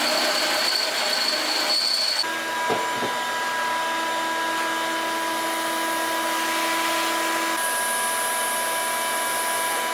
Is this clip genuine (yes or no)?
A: yes